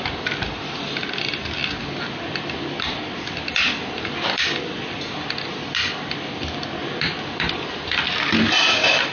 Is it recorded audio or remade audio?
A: recorded